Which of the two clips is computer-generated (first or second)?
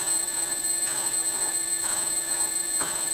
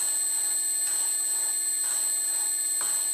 first